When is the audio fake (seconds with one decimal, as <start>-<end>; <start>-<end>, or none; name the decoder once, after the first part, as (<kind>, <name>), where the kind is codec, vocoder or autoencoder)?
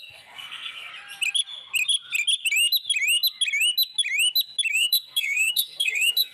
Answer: 0.0-0.9 (codec, SNAC); 4.7-6.3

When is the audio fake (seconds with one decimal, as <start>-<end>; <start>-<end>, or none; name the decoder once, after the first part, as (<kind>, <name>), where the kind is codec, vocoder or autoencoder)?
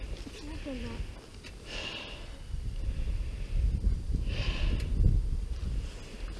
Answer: none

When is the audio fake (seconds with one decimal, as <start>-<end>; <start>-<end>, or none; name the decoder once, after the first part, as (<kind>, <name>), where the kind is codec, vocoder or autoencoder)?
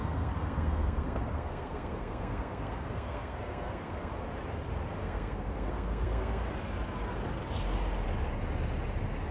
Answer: 0.0-4.1 (codec, SNAC); 5.0-6.5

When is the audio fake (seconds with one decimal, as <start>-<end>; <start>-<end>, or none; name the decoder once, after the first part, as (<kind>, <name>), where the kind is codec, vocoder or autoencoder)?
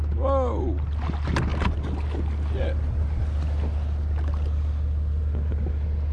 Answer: none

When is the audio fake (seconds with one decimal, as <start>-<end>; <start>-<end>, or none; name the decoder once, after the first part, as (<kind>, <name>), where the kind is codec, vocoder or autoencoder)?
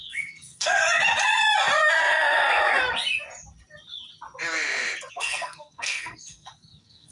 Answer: 0.0-0.8 (codec, SNAC); 5.1-7.1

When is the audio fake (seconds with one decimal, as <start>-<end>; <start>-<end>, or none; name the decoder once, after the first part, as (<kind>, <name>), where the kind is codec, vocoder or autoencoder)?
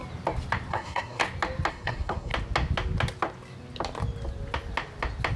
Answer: 0.7-1.2 (codec, SNAC); 1.7-2.3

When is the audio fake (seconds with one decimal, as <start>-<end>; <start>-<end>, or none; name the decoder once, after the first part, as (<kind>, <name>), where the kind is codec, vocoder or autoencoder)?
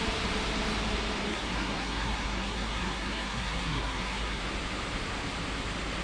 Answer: 1.3-4.4 (codec, SNAC)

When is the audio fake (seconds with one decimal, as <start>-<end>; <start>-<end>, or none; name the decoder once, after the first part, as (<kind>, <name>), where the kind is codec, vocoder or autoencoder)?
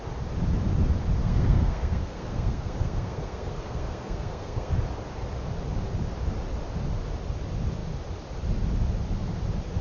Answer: 1.2-4.7 (codec, SNAC)